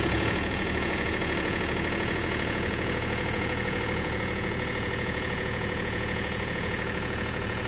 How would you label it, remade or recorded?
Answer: remade